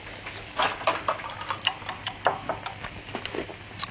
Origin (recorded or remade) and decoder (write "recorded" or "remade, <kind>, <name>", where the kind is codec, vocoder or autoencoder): recorded